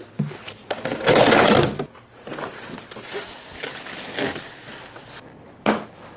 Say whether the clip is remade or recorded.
recorded